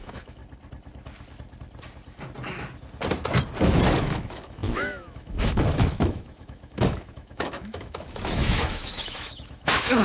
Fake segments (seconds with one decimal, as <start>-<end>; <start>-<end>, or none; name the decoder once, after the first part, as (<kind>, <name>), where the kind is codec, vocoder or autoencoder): 0.0-0.4 (autoencoder, DAC-VAE); 4.0-10.0